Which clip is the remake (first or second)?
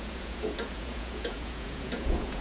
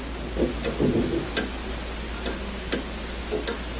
first